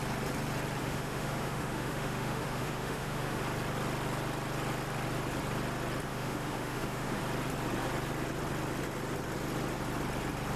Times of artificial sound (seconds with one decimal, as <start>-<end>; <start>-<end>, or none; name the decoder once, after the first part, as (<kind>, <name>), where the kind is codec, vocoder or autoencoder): 0.8-3.4 (autoencoder, DAC-VAE); 6.1-7.2